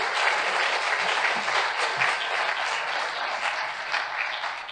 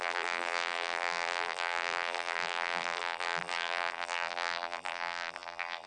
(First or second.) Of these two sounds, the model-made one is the second